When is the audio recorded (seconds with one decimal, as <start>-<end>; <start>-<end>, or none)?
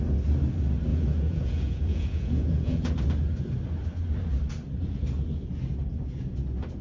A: 0.0-0.9; 2.9-6.8